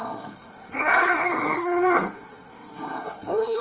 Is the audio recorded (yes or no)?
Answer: no